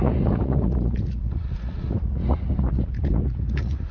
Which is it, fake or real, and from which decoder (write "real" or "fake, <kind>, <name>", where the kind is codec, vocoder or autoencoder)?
fake, vocoder, Vocos